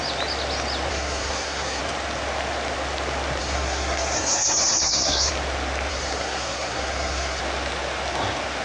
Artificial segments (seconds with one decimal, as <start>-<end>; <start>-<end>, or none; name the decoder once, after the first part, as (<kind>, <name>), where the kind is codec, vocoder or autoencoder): 0.9-1.8 (codec, SNAC); 3.4-5.3; 5.9-7.4